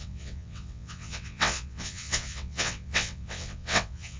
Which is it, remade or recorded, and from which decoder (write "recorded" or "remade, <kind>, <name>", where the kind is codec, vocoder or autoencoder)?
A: remade, vocoder, WaveNeXt